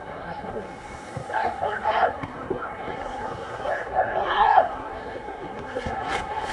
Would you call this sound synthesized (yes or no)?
yes